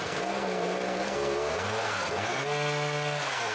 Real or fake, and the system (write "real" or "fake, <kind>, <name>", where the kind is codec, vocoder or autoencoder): fake, codec, SNAC